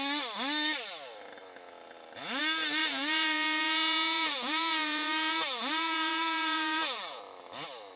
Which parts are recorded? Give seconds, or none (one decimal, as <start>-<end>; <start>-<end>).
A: 0.0-2.8; 7.2-8.0